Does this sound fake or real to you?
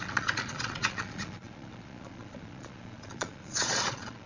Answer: fake